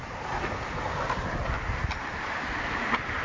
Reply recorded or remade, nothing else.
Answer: recorded